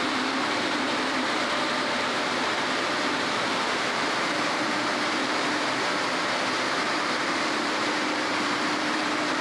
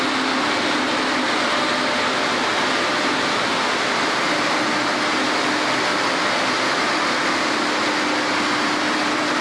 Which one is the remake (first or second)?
first